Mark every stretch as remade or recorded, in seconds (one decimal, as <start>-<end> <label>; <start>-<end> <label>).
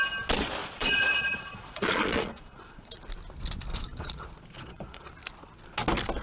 0.0-0.6 recorded; 0.6-3.0 remade; 3.0-3.7 recorded; 3.7-5.1 remade; 5.1-6.2 recorded